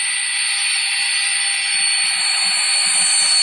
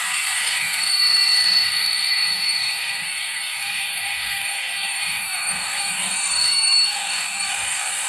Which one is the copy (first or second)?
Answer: second